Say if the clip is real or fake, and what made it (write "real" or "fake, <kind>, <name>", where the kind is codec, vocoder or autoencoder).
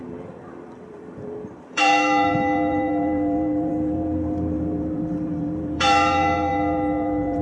fake, vocoder, BigVGAN v2